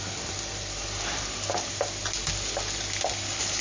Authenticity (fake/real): real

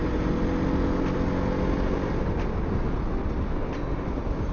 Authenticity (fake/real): real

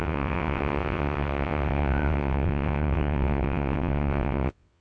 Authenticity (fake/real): fake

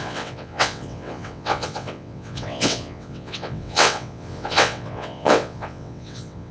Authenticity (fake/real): fake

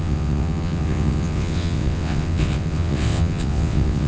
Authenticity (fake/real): fake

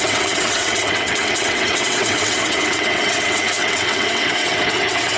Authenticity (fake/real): fake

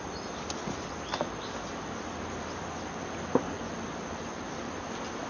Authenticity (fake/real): real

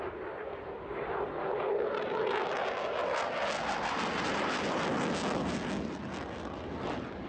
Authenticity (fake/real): real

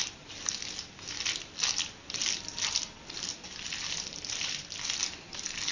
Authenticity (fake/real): real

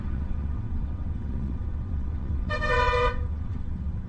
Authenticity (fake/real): fake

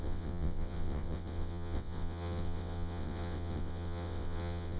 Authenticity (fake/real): fake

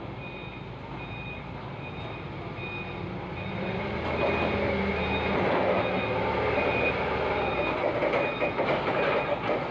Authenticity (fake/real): real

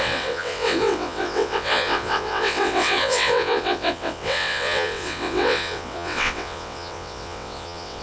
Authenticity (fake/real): fake